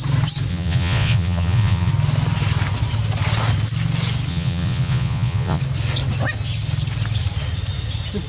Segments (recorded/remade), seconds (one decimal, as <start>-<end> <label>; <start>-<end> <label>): 0.0-0.5 recorded; 0.5-1.9 remade; 1.9-4.3 recorded; 4.3-5.6 remade; 5.6-8.3 recorded